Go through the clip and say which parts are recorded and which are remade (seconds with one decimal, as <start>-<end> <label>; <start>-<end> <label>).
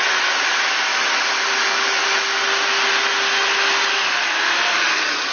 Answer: 0.0-5.3 recorded